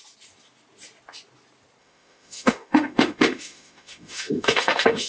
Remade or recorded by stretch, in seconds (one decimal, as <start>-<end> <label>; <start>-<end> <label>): 0.0-1.8 recorded; 1.8-5.1 remade